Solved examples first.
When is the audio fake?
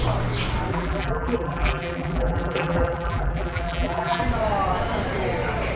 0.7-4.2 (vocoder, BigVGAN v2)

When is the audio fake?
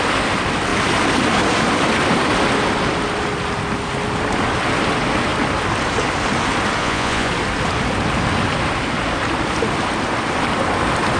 6.8-7.3 (vocoder, Vocos)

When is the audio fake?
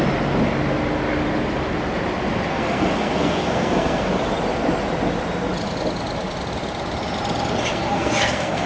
2.5-4.1 (codec, SNAC); 7.7-8.7